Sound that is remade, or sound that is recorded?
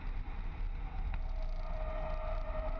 recorded